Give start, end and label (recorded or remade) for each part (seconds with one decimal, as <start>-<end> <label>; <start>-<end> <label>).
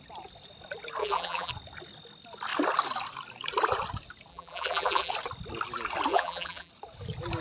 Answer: 0.0-1.0 recorded; 1.0-1.5 remade; 1.5-4.3 recorded; 4.3-5.1 remade; 5.1-6.1 recorded; 6.1-6.7 remade; 6.7-7.4 recorded